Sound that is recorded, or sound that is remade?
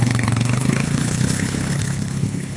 remade